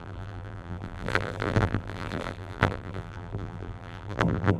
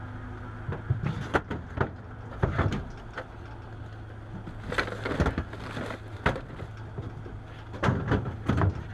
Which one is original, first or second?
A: second